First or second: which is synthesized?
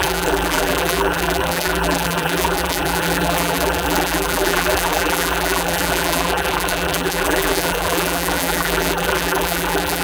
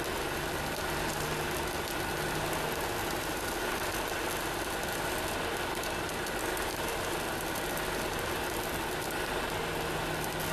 first